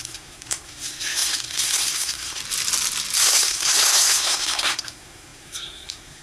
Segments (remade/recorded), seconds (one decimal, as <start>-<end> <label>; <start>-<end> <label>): 0.0-2.4 remade; 2.4-3.2 recorded; 3.2-6.2 remade